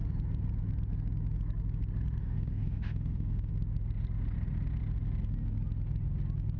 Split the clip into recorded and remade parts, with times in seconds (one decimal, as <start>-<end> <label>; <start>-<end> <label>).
0.0-2.2 recorded; 2.2-3.5 remade; 3.5-6.6 recorded